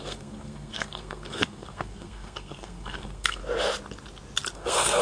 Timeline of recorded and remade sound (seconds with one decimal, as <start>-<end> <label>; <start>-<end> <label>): 0.0-3.4 remade; 3.4-4.5 recorded; 4.5-5.0 remade